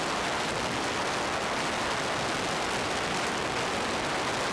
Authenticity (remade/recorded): recorded